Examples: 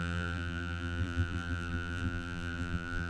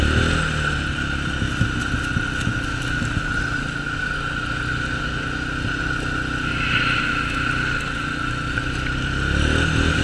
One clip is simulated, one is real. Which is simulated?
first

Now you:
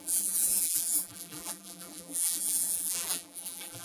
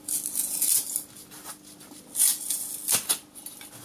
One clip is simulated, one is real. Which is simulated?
first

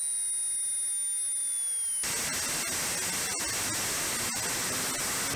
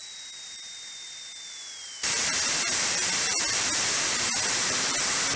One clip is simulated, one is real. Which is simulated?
second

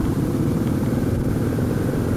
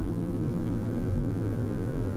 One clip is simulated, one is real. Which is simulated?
second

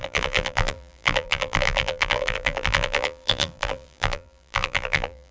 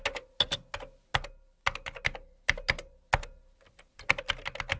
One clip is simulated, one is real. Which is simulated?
first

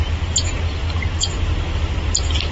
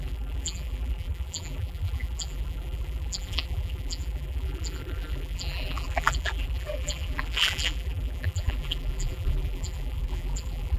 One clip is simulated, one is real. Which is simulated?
second